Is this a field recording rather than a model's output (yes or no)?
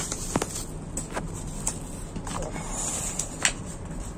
yes